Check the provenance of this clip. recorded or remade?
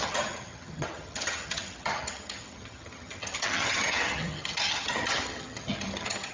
remade